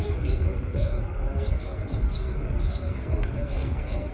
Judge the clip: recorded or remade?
remade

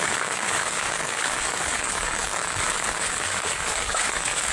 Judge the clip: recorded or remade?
remade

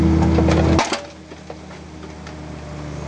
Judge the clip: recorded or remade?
recorded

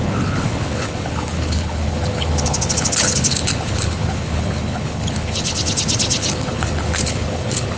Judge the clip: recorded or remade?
remade